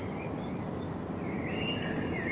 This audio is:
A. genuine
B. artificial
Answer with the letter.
A